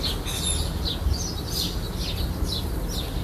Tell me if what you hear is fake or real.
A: real